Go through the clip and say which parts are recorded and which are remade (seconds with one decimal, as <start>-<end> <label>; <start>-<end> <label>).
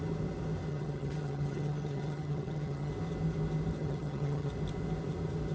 0.0-0.7 recorded; 0.7-2.9 remade; 2.9-3.8 recorded; 3.8-4.5 remade; 4.5-5.5 recorded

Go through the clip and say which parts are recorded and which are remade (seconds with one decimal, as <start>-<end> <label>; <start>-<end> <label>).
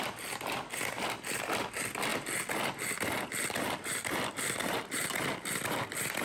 0.0-6.2 recorded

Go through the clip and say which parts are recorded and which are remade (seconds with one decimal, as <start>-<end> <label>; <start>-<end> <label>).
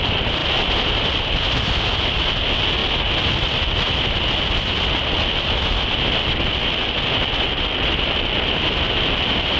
0.0-9.6 recorded